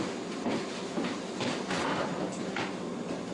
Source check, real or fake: real